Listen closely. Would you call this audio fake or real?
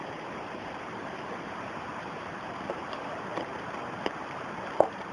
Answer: fake